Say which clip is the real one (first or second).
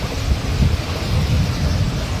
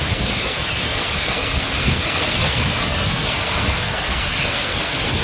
first